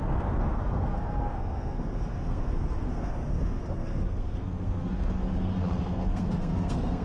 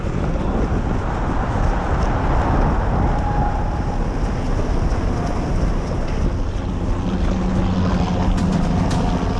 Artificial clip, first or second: first